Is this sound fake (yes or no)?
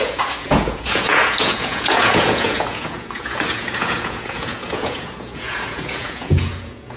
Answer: yes